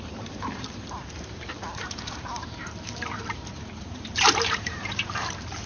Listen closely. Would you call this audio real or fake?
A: fake